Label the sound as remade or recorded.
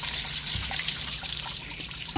remade